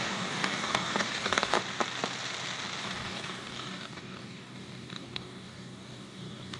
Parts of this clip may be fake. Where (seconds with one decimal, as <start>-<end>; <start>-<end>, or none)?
0.0-1.6; 2.8-6.6